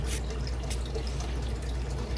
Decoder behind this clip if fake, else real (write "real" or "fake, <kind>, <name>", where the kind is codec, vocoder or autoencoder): real